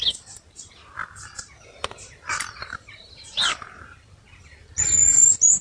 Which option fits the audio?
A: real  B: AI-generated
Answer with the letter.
A